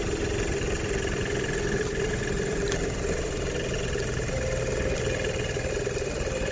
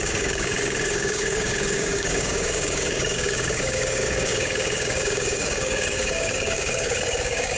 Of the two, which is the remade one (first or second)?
second